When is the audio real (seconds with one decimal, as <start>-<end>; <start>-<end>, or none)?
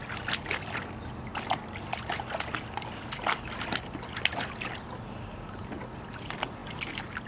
0.0-7.3